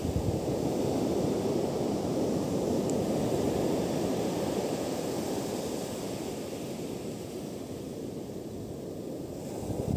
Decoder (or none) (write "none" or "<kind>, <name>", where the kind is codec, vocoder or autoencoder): none